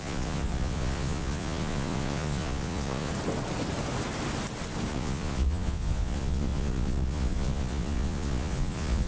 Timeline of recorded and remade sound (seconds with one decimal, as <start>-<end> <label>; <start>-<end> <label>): 0.0-3.1 remade; 3.1-4.9 recorded; 4.9-9.1 remade